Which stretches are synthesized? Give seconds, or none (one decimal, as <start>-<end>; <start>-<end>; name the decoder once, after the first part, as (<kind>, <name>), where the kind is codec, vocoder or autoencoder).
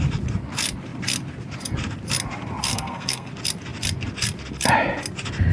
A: 2.7-3.3 (codec, SNAC)